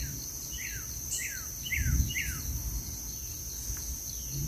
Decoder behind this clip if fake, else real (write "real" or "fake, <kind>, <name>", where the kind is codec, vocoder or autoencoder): real